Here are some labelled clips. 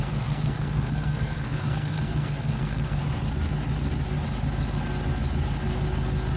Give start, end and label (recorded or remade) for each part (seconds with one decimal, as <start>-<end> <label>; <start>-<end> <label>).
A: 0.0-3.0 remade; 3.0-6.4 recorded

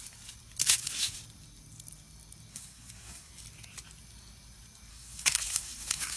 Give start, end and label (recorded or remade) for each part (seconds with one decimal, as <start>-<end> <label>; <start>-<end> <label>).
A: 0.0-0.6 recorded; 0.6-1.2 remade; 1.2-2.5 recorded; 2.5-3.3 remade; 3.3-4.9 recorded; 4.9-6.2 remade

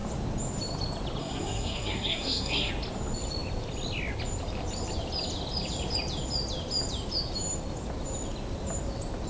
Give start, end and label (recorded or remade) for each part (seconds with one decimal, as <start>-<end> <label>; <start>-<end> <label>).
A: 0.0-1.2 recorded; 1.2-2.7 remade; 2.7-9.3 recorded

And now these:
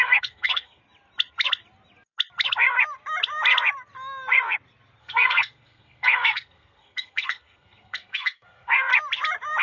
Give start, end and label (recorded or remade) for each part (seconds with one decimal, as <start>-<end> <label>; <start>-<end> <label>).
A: 0.0-0.8 remade; 0.8-5.0 recorded; 5.0-8.9 remade; 8.9-9.6 recorded

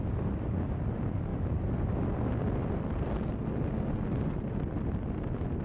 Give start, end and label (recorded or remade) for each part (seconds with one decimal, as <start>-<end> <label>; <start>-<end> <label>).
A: 0.0-5.6 recorded

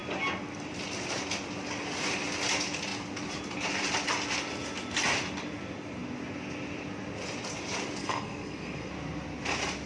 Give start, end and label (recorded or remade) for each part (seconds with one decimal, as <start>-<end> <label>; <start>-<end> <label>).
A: 0.0-8.0 recorded; 8.0-8.9 remade; 8.9-9.9 recorded

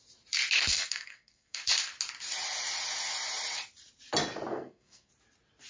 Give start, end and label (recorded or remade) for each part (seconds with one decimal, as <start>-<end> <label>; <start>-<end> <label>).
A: 0.0-0.7 recorded; 0.7-1.6 remade; 1.6-4.5 recorded; 4.5-5.1 remade; 5.1-5.7 recorded

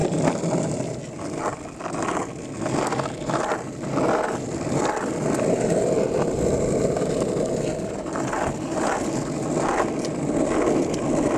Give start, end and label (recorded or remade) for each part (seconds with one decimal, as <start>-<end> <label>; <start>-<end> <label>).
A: 0.0-11.4 recorded